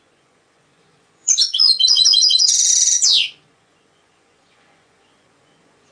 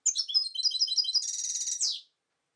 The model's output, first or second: first